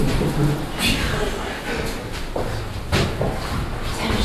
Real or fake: real